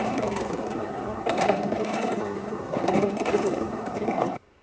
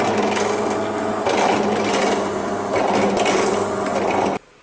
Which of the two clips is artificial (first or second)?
first